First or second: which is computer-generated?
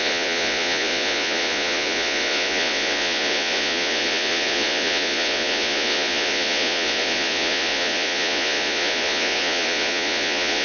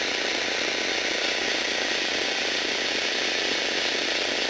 first